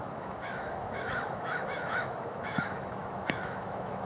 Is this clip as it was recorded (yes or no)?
no